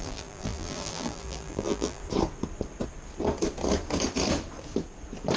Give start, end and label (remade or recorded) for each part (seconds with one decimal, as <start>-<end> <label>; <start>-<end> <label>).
0.0-2.0 remade; 2.0-5.4 recorded